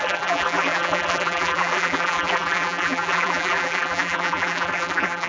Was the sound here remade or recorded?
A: remade